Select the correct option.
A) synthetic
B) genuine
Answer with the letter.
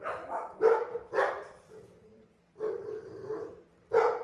A